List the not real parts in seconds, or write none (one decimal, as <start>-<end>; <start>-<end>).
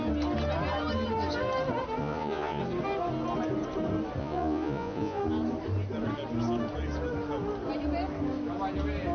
2.0-2.6; 4.2-5.2